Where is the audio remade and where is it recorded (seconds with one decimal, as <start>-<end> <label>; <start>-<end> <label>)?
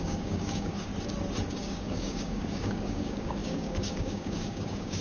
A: 0.0-0.9 remade; 0.9-1.5 recorded; 1.5-5.0 remade